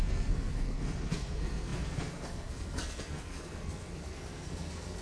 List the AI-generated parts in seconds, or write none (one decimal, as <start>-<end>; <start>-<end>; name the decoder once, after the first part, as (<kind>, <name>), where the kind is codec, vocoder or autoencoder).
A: 0.0-5.0 (codec, SNAC)